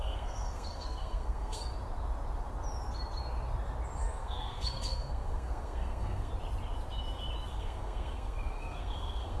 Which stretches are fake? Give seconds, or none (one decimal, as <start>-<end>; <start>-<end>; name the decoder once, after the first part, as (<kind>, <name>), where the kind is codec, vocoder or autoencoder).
0.0-1.7 (codec, SNAC); 4.0-6.3; 7.5-9.4